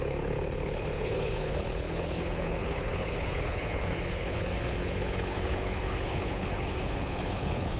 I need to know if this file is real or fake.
fake